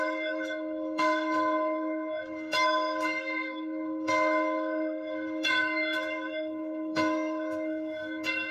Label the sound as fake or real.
fake